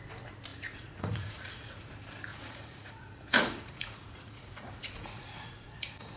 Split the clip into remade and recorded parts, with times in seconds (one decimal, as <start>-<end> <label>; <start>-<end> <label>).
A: 0.0-0.5 recorded; 0.5-1.9 remade; 1.9-2.3 recorded; 2.3-6.2 remade